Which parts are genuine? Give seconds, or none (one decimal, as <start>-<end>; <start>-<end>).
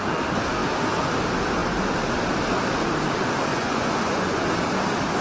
0.0-3.5; 4.4-5.2